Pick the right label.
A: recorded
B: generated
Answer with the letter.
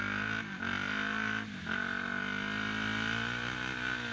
A